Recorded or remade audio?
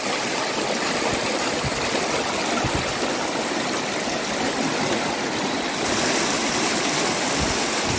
recorded